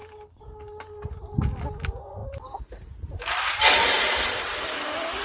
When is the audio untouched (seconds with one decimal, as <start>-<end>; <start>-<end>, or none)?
0.0-5.2